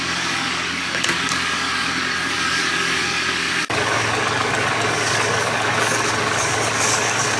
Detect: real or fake fake